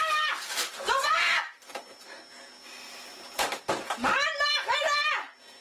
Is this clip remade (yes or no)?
no